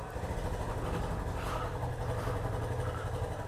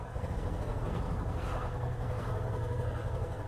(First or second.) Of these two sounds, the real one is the first